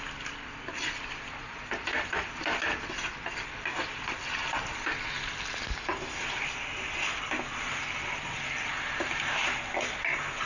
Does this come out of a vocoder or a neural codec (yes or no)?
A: no